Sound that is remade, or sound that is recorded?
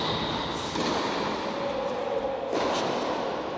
recorded